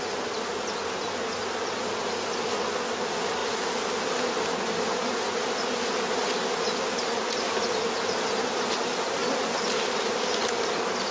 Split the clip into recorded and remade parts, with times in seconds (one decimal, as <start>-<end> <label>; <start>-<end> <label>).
0.0-3.4 recorded; 3.4-3.9 remade; 3.9-11.1 recorded

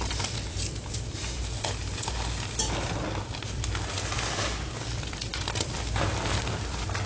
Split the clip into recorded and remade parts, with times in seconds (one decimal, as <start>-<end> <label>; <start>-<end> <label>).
0.0-1.8 remade; 1.8-3.4 recorded; 3.4-7.1 remade

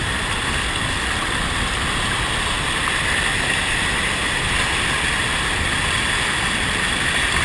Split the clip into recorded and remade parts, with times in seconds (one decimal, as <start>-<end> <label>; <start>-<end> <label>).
0.0-3.3 recorded; 3.3-3.9 remade; 3.9-7.4 recorded

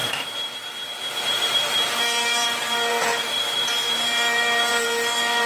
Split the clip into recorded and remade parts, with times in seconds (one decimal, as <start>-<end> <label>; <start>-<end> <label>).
0.0-5.5 remade